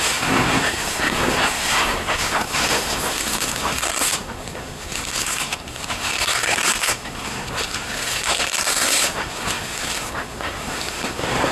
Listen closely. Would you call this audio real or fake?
fake